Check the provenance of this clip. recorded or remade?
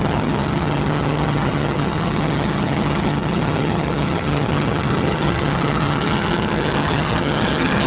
remade